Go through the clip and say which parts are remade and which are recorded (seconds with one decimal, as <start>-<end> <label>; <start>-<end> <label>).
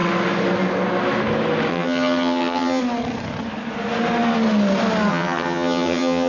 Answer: 0.0-1.7 recorded; 1.7-2.8 remade; 2.8-5.1 recorded; 5.1-6.3 remade